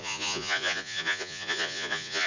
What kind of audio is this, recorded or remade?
remade